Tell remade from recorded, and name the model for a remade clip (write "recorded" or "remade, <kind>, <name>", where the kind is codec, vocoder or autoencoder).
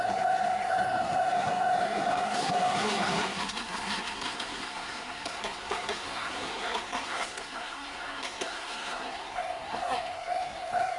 remade, codec, SNAC